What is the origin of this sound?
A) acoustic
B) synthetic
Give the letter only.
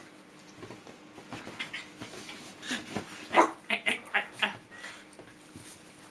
A